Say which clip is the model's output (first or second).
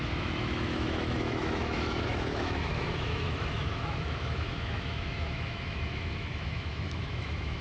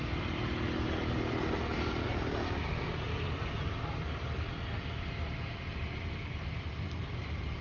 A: first